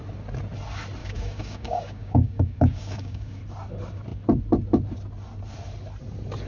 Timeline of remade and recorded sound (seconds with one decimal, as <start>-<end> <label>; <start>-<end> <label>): 0.0-1.0 recorded; 1.0-3.4 remade; 3.4-6.5 recorded